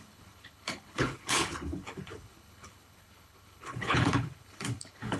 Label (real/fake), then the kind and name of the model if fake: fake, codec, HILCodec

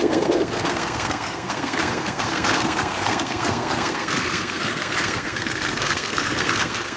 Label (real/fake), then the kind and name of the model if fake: fake, codec, SNAC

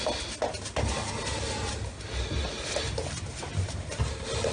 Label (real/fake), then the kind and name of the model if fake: real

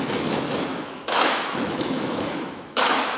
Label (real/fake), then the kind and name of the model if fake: fake, autoencoder, DAC-VAE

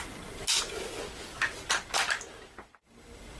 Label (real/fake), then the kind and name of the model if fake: real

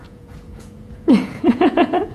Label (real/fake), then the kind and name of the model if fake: fake, vocoder, Vocos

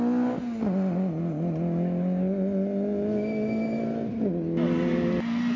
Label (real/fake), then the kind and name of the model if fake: real